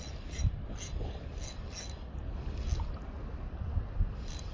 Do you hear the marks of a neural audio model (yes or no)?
no